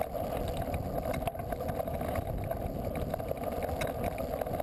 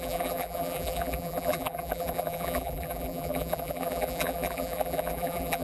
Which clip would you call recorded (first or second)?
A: first